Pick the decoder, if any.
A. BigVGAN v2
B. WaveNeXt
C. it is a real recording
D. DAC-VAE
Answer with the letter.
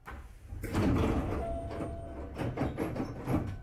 C